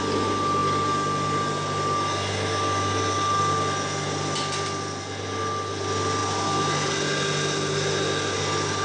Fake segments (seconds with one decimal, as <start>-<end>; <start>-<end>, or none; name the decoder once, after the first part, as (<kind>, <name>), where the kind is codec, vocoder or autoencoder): none